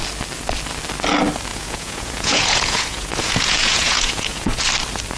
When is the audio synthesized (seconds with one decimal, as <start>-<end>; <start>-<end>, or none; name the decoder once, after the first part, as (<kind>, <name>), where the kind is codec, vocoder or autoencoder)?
1.5-4.6 (vocoder, Vocos)